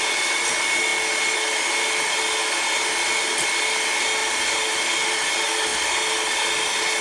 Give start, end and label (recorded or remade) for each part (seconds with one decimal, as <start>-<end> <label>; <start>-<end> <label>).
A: 0.0-7.0 recorded